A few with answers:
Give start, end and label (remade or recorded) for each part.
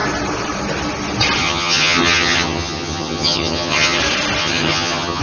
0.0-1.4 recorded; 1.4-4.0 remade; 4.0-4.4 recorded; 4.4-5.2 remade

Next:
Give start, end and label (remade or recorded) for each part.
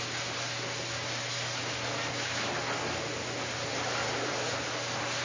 0.0-5.2 recorded